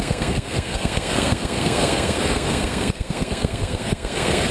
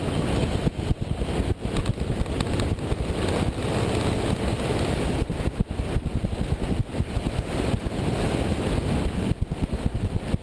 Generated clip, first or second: first